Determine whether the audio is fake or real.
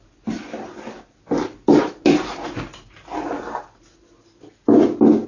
real